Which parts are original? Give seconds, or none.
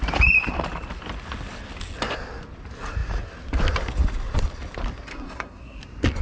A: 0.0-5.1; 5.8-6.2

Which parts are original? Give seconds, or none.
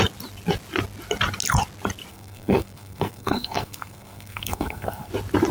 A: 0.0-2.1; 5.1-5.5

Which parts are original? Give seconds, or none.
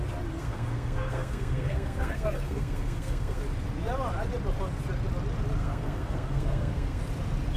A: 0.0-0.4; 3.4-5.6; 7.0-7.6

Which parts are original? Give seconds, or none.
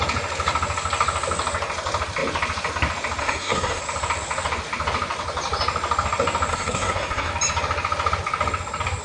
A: 0.0-3.2; 3.8-6.5; 7.3-9.0